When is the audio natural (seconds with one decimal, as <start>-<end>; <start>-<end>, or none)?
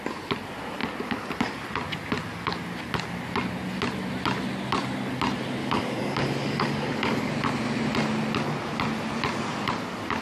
0.0-5.6; 7.3-10.2